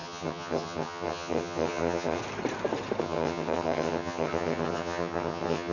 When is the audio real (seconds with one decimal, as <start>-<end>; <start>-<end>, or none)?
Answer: 2.2-3.0